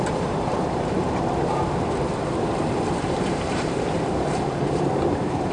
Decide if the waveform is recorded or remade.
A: remade